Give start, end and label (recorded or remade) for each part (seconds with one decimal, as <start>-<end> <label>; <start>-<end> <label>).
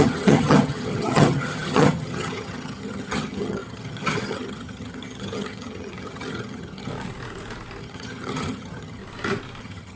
0.0-6.9 remade; 6.9-7.8 recorded; 7.8-9.0 remade; 9.0-9.6 recorded; 9.6-10.0 remade